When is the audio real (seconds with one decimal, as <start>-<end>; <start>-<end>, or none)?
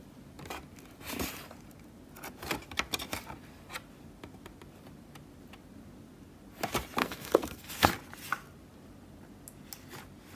0.0-7.0; 7.9-10.4